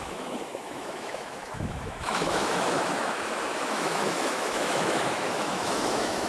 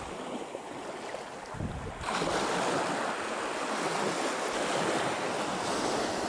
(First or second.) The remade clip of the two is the first